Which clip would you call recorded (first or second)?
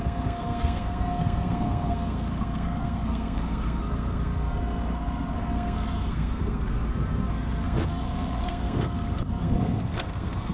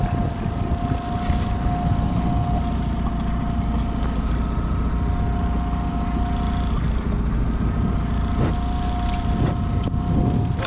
second